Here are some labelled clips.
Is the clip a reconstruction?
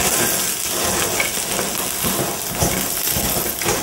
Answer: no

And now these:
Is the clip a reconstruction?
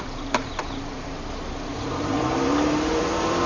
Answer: yes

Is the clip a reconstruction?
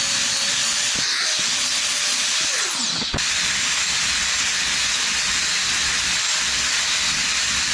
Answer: no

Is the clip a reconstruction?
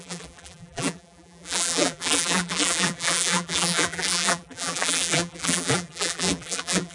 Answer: yes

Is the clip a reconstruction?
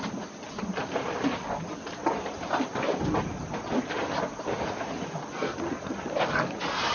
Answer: no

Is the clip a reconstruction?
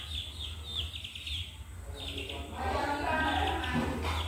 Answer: no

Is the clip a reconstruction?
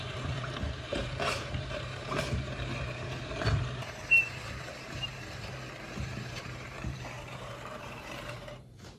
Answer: yes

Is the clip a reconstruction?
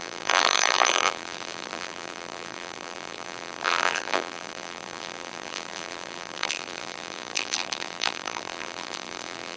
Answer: yes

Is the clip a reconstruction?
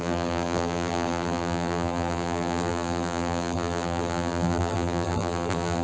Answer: yes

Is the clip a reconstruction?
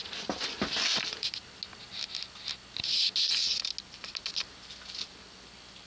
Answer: no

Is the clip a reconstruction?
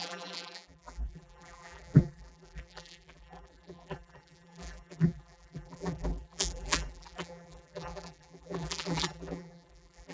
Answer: yes